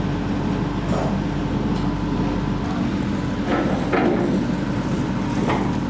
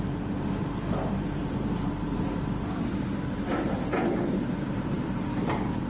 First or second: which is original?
first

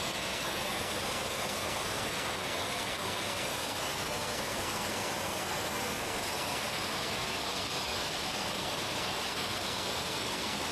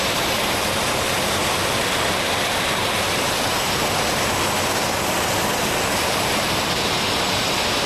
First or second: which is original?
second